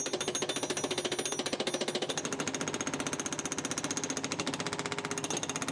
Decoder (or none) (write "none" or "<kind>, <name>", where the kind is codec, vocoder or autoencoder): none